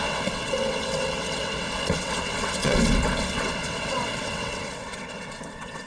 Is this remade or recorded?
remade